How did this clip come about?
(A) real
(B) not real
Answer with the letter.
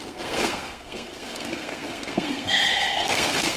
B